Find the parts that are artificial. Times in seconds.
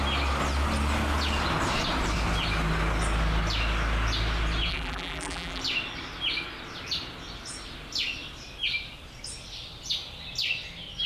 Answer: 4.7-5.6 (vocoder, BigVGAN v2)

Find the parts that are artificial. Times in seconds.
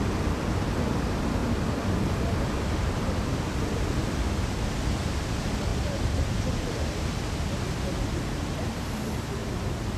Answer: 5.7-6.7 (vocoder, BigVGAN v2)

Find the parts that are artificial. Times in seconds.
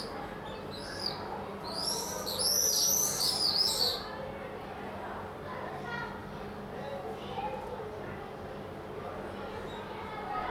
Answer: 6.2-7.0 (vocoder, BigVGAN v2)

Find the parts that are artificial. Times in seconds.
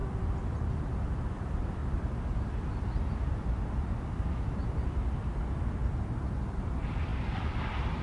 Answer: 1.1-1.8 (vocoder, BigVGAN v2); 4.3-5.8; 6.6-7.1; 7.6-8.0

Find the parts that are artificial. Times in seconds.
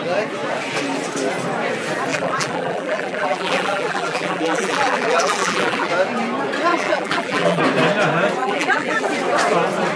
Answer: 2.1-5.9 (vocoder, BigVGAN v2); 6.7-7.6; 8.4-9.1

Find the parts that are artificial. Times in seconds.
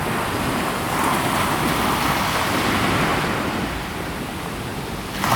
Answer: none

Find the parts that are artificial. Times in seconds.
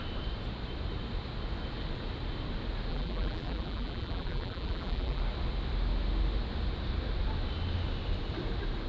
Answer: 2.9-5.2 (vocoder, BigVGAN v2)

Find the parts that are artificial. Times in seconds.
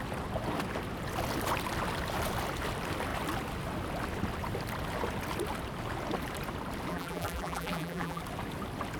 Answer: 6.9-8.2 (vocoder, BigVGAN v2)